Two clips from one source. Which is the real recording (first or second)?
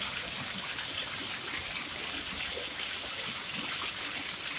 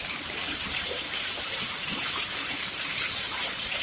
first